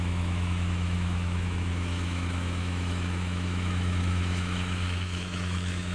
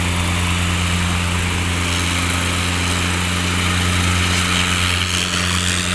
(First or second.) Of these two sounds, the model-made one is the first